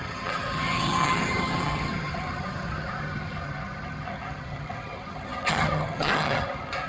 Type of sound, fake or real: fake